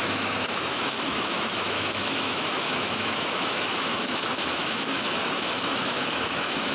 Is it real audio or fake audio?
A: fake